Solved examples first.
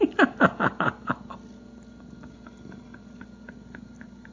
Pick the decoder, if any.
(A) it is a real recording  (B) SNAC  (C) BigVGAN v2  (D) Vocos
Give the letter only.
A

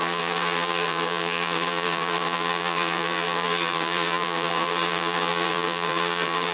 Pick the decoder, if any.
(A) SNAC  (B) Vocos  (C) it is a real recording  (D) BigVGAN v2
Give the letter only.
D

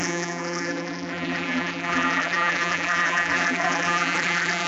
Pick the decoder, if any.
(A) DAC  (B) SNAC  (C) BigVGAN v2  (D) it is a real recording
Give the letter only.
C